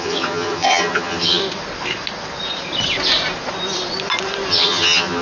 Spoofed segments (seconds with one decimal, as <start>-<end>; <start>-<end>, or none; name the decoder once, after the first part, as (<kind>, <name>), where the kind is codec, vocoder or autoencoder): 0.0-1.4 (vocoder, HiFi-GAN); 4.5-5.2